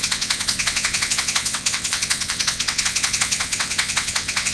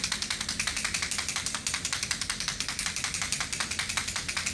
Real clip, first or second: second